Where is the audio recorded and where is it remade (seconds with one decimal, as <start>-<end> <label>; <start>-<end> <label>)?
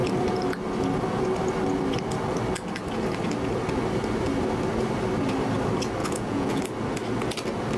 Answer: 0.0-6.0 recorded; 6.0-6.6 remade; 6.6-7.8 recorded